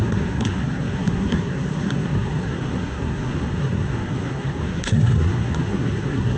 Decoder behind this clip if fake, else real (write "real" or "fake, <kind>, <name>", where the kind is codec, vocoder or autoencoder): fake, codec, SNAC